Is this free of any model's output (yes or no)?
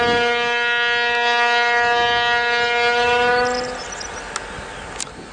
yes